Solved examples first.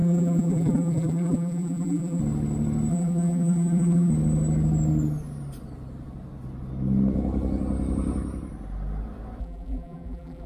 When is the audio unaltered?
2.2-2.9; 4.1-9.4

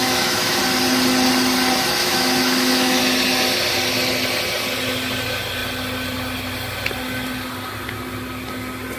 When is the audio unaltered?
0.6-2.0; 3.0-9.0

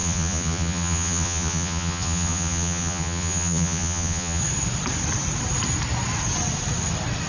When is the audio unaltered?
4.4-7.3

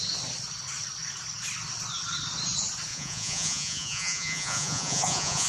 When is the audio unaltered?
0.0-2.9